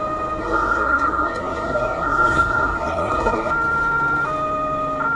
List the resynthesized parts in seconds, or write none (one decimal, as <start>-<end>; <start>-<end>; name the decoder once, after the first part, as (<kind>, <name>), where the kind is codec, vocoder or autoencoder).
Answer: 0.4-3.5 (codec, SNAC)

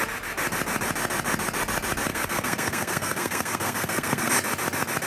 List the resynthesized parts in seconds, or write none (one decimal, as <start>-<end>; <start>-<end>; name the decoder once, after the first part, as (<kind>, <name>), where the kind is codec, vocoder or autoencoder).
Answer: 2.1-4.3 (codec, SNAC)

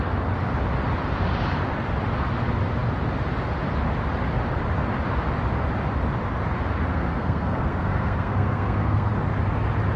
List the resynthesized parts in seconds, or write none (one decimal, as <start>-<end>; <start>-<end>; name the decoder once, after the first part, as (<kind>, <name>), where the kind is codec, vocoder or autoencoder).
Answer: 6.9-9.1 (codec, SNAC)

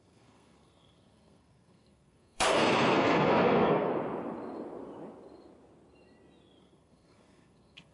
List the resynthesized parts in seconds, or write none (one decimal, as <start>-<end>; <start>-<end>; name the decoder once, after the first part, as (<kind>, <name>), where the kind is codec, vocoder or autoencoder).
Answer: 0.0-3.9 (codec, SNAC); 6.6-7.9

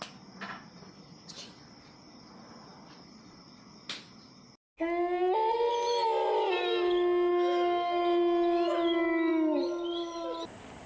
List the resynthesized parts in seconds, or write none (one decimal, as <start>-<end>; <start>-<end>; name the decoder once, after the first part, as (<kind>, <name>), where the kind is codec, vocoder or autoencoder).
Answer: 7.3-8.0 (codec, SNAC)

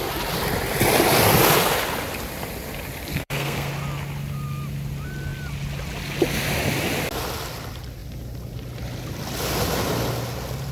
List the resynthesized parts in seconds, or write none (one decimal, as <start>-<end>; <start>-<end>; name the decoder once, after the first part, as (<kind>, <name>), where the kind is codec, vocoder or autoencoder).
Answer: 3.1-3.7 (codec, SNAC)

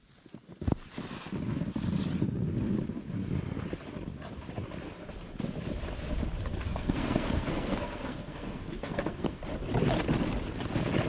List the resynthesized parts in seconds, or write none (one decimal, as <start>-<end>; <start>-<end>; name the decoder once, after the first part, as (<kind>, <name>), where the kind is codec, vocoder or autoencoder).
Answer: 6.5-9.4 (codec, SNAC)

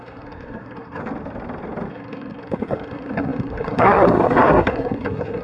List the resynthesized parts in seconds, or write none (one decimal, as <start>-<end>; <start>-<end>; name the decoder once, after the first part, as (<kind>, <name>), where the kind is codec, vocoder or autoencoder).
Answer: 0.0-1.0 (codec, SNAC); 1.9-5.4